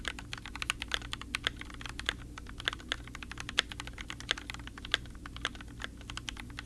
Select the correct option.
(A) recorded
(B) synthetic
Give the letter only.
A